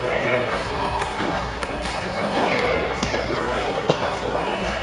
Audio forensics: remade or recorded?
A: remade